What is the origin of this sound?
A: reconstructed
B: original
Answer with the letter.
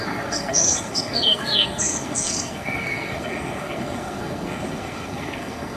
A